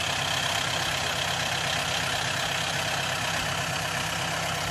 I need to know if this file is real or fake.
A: real